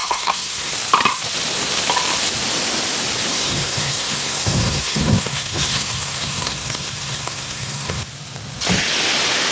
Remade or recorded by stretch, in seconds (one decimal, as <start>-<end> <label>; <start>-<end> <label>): 0.0-0.7 remade; 0.7-3.3 recorded; 3.3-8.1 remade; 8.1-9.5 recorded